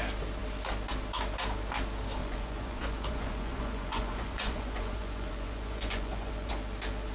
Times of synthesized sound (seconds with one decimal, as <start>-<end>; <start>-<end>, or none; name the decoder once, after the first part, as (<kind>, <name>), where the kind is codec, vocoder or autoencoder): 2.2-6.5 (vocoder, Vocos)